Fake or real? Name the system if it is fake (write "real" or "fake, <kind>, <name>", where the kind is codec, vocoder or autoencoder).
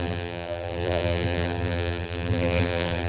fake, vocoder, BigVGAN v2